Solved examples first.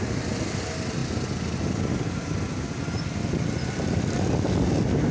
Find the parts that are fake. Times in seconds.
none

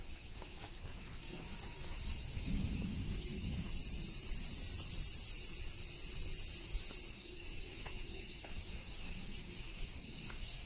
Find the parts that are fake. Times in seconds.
0.0-3.8 (codec, DAC); 7.1-10.7

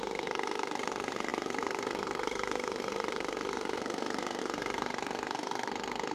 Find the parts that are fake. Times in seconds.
0.0-6.1 (codec, SNAC)

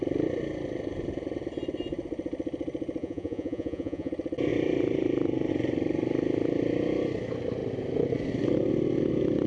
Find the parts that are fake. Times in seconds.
3.0-4.1 (vocoder, Vocos)

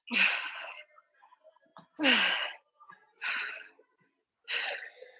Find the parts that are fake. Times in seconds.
none

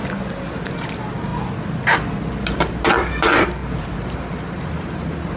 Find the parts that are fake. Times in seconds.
0.6-1.3 (vocoder, BigVGAN v2); 2.7-5.4